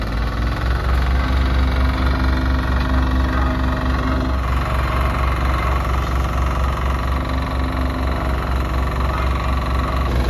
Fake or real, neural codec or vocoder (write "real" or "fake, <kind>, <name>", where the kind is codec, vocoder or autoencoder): real